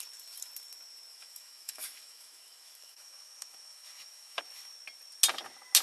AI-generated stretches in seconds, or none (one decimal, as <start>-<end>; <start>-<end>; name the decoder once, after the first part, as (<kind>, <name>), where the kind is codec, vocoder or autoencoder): 1.1-4.4 (autoencoder, DAC-VAE)